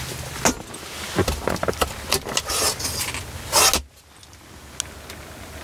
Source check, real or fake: real